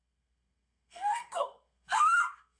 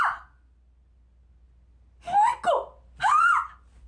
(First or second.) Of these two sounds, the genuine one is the second